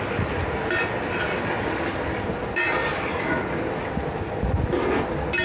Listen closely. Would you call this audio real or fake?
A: real